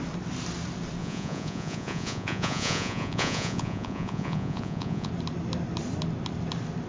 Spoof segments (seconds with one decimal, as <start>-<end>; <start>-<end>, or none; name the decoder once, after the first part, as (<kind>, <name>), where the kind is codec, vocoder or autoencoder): 1.0-5.1 (vocoder, Vocos)